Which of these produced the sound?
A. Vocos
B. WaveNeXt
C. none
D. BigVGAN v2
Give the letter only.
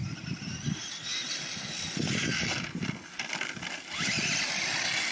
C